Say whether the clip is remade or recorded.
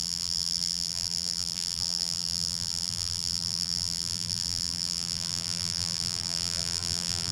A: remade